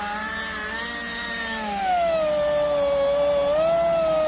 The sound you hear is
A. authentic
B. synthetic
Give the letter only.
A